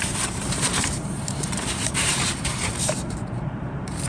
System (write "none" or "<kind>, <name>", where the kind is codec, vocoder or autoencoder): vocoder, BigVGAN v2